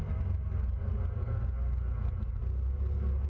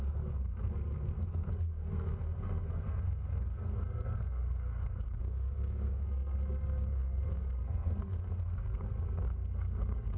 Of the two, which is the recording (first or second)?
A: first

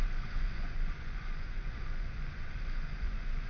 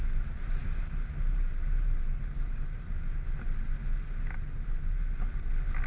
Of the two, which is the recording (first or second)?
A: second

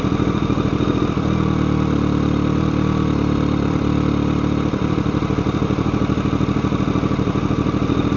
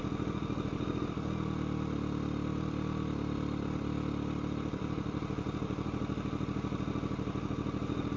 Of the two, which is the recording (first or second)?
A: second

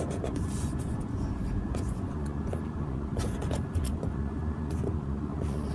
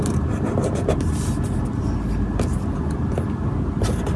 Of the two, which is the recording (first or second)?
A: second